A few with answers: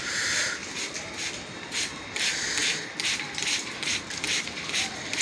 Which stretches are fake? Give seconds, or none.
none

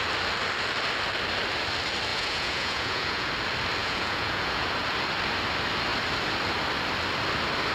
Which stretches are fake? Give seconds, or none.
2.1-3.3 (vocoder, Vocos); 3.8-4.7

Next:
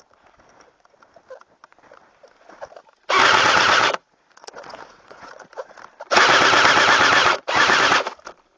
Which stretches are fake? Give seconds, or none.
3.2-5.8 (vocoder, Vocos); 7.2-7.8

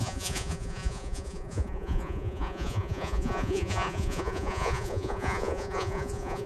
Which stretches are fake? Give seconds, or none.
0.0-6.5 (vocoder, Vocos)

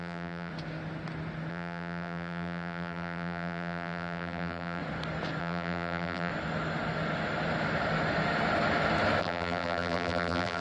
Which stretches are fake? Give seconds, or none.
0.0-0.5 (vocoder, BigVGAN v2); 1.5-4.8; 5.4-6.3; 9.2-10.6

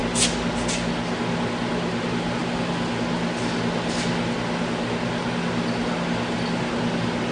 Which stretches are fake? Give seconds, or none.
none

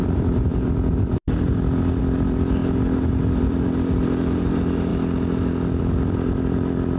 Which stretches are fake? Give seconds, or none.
0.0-2.6 (vocoder, BigVGAN v2); 3.3-4.9; 5.8-7.0